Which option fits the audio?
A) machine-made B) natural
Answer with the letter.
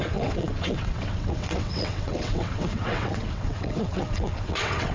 A